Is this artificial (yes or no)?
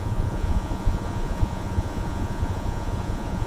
yes